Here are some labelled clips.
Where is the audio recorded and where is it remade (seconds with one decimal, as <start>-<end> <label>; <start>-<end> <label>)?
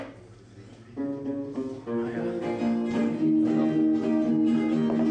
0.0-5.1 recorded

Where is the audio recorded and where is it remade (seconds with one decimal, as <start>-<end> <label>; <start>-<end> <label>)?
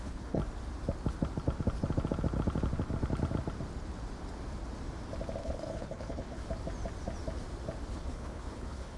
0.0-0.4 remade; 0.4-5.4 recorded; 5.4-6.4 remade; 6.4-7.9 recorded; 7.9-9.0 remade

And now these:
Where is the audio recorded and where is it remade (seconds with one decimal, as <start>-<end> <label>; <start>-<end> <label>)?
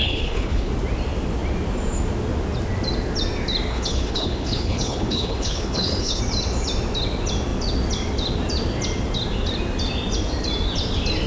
0.0-0.7 remade; 0.7-3.7 recorded; 3.7-6.2 remade; 6.2-11.3 recorded